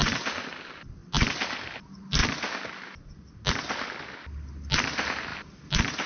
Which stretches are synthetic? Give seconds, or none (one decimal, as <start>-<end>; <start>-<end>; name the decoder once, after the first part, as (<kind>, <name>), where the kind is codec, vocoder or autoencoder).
none